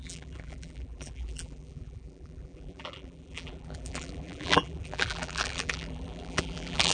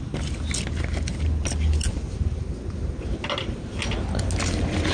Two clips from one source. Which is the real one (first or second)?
second